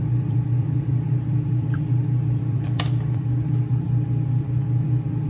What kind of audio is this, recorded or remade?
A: remade